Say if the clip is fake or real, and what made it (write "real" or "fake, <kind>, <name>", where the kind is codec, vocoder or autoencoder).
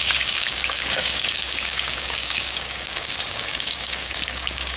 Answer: fake, codec, DAC